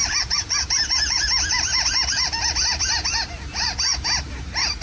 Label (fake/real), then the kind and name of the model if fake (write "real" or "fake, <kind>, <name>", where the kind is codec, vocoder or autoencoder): real